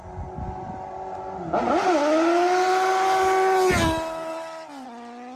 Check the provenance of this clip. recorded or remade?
recorded